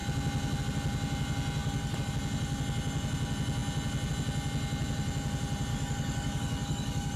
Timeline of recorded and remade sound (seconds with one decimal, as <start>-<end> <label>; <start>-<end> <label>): 0.0-1.6 recorded; 1.6-2.1 remade; 2.1-5.7 recorded; 5.7-7.2 remade